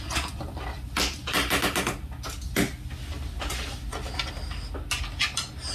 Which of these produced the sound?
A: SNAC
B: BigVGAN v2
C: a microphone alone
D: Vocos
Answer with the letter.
C